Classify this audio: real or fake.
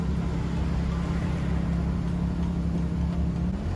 real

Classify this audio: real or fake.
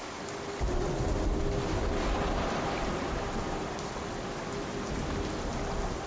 real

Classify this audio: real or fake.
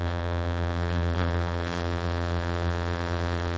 fake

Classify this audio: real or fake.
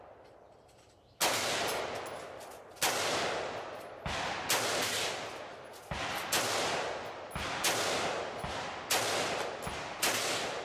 real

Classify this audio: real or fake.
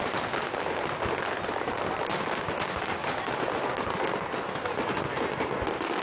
real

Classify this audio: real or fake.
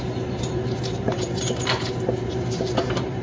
fake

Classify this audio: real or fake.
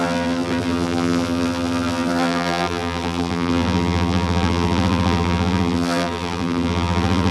fake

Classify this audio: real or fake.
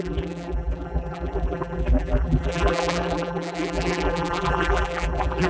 fake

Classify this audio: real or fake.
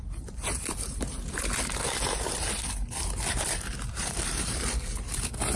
fake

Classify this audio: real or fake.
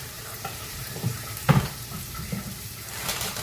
fake